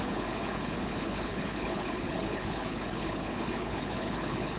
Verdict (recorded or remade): remade